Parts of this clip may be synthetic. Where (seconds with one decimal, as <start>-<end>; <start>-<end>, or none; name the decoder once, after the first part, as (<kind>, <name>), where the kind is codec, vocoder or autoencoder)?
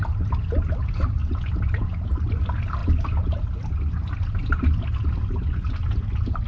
none